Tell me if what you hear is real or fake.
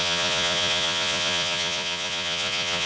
fake